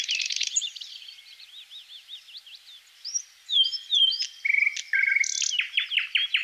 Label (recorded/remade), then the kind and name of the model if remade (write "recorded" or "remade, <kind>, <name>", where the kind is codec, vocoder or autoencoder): remade, vocoder, BigVGAN v2